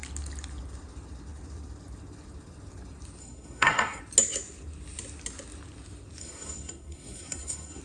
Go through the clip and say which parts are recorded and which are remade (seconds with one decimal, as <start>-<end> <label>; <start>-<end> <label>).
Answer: 0.0-3.2 recorded; 3.2-4.0 remade; 4.0-6.2 recorded; 6.2-7.8 remade